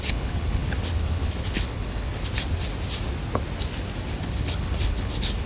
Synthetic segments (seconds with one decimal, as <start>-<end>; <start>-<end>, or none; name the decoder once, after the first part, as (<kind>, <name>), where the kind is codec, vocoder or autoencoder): 0.0-2.3 (codec, HILCodec); 4.2-5.5